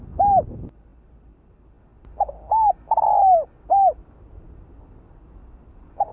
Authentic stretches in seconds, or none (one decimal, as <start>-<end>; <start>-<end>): 0.0-6.1